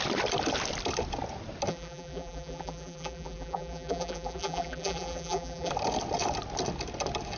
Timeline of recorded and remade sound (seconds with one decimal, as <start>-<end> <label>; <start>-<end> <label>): 0.0-1.7 recorded; 1.7-5.7 remade; 5.7-7.4 recorded